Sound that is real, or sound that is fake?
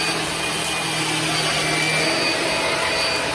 real